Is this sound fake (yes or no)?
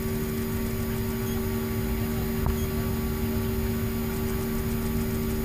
no